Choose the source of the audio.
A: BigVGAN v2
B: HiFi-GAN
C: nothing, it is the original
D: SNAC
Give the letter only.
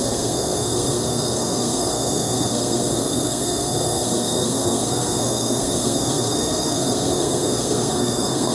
D